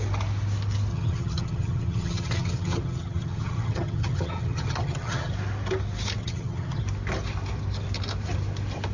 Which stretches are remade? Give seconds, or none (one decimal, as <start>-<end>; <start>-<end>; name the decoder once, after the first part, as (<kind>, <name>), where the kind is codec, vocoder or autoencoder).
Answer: 0.9-5.3 (vocoder, HiFi-GAN); 6.2-6.8